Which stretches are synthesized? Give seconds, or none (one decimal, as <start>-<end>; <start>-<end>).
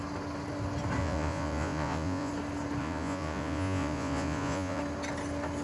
1.0-2.3; 2.8-4.8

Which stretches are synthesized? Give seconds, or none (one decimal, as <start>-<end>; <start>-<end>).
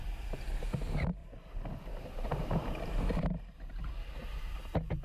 1.2-3.2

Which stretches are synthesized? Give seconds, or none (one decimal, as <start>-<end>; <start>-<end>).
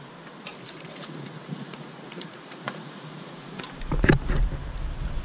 0.5-3.6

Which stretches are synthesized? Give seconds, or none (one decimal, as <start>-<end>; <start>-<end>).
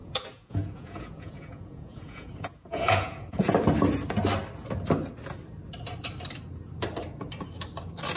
0.0-3.5